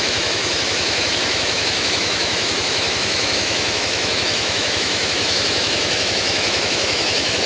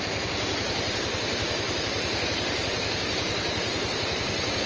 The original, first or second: second